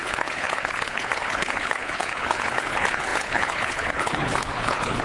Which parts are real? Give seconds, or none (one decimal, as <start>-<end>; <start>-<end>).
none